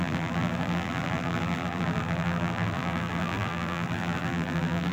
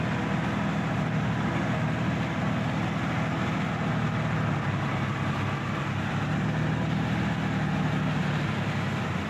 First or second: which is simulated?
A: first